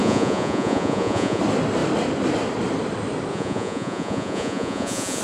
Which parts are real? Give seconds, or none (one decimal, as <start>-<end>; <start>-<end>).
1.4-3.3